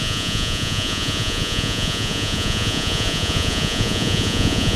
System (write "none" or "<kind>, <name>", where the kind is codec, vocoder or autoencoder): vocoder, Vocos